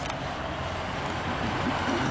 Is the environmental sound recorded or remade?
recorded